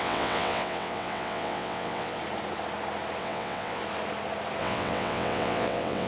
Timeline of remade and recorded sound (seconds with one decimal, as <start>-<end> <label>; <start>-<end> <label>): 0.0-2.2 remade; 2.2-3.2 recorded; 3.2-3.8 remade; 3.8-4.6 recorded; 4.6-6.1 remade